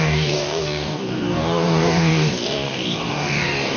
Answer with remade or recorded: remade